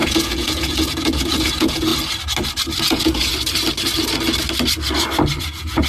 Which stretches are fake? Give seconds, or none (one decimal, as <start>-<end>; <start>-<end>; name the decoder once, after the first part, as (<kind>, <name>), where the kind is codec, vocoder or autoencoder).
0.0-1.9 (vocoder, Vocos); 2.8-3.3; 5.4-5.9